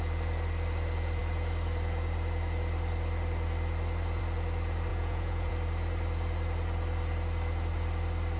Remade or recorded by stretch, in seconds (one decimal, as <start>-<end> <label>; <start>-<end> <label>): 0.0-4.9 recorded; 4.9-5.5 remade; 5.5-8.4 recorded